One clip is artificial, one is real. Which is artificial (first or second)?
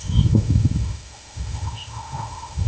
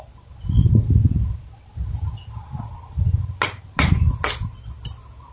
first